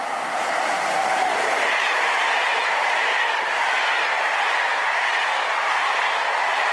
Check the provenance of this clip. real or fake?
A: real